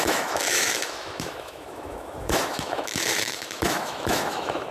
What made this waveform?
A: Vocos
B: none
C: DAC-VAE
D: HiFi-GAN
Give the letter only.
C